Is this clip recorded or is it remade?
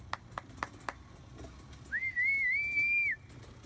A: recorded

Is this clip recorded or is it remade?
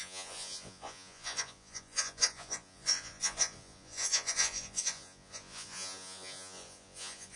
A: remade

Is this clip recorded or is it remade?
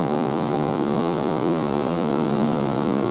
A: remade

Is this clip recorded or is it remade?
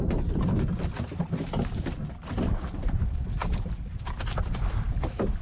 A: recorded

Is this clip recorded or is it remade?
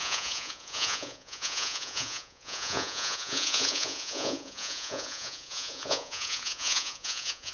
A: remade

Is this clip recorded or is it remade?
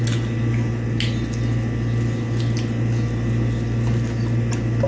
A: recorded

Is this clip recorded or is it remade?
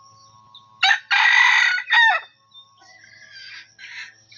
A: recorded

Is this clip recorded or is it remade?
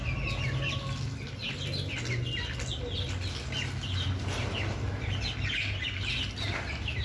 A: recorded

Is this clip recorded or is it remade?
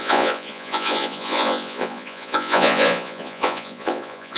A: remade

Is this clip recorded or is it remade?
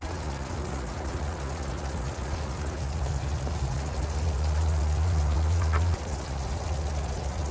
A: remade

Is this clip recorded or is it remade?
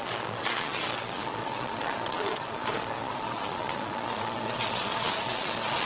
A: remade